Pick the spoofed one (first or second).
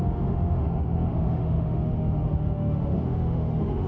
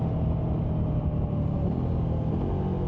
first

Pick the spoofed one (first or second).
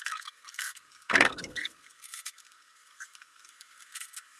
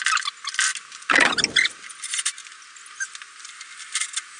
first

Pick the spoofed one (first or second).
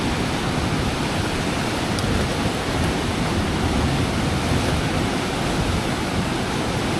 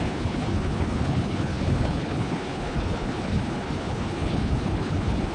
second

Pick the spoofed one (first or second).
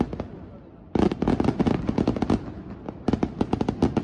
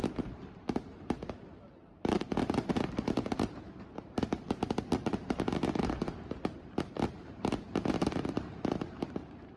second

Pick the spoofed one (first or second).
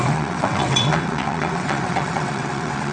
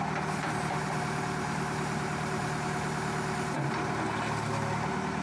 first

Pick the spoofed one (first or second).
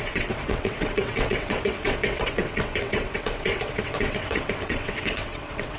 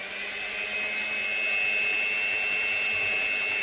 first